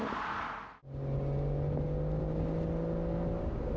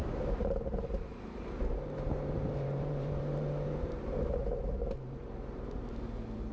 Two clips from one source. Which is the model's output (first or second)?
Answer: second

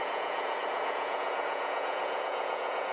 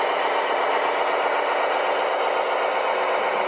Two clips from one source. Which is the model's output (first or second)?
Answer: first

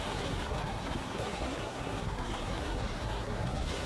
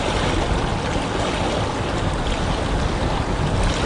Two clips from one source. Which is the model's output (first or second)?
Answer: first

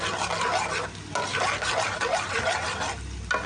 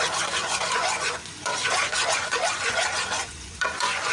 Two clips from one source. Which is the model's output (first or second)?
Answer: second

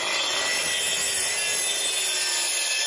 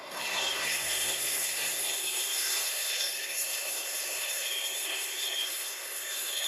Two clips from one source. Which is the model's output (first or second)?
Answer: second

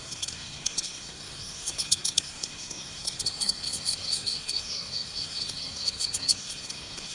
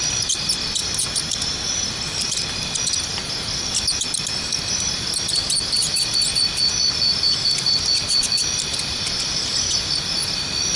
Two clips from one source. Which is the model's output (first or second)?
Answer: first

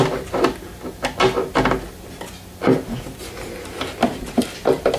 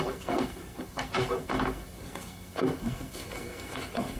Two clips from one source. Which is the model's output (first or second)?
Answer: second